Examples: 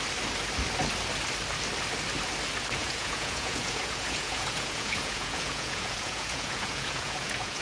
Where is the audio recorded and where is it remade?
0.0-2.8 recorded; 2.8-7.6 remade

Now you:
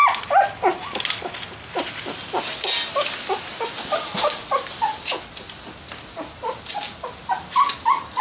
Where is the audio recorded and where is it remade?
0.0-8.2 recorded

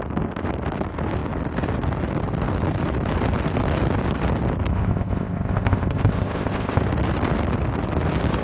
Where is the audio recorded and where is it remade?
0.0-4.7 recorded; 4.7-6.8 remade; 6.8-8.4 recorded

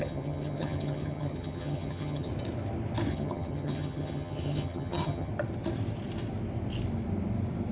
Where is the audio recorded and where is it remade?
0.0-2.3 remade; 2.3-3.1 recorded; 3.1-5.3 remade; 5.3-7.7 recorded

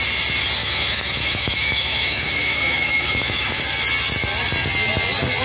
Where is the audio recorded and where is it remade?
0.0-0.6 recorded; 0.6-3.6 remade; 3.6-5.4 recorded

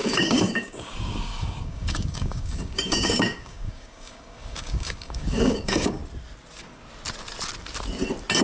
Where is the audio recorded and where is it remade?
0.0-6.0 remade; 6.0-8.4 recorded

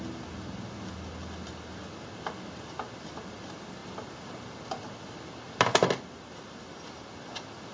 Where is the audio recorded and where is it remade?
0.0-7.7 recorded

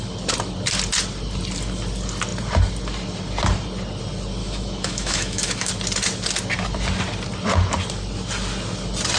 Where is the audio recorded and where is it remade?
0.0-4.4 recorded; 4.4-5.7 remade; 5.7-9.2 recorded